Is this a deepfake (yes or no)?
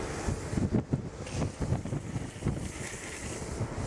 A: no